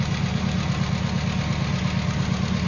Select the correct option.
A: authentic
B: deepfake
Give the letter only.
A